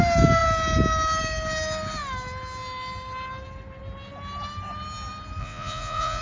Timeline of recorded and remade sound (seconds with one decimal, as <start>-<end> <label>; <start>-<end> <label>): 0.0-5.4 recorded; 5.4-6.2 remade

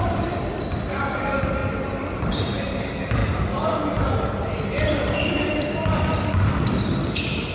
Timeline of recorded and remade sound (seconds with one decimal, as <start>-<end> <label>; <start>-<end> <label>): 0.0-1.6 remade; 1.6-2.2 recorded; 2.2-7.5 remade

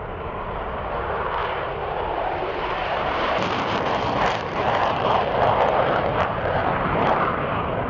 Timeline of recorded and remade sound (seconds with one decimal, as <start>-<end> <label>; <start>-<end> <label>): 0.0-5.2 remade; 5.2-6.3 recorded; 6.3-7.9 remade

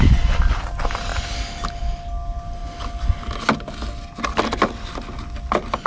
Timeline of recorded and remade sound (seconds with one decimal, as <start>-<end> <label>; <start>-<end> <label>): 0.0-5.9 recorded

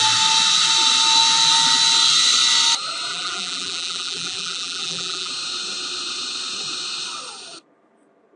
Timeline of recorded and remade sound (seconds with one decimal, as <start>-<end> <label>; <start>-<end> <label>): 0.0-3.1 recorded; 3.1-5.3 remade; 5.3-8.4 recorded

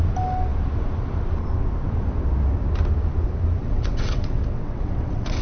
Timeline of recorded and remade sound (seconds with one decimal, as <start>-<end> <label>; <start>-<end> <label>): 0.0-3.6 recorded; 3.6-5.4 remade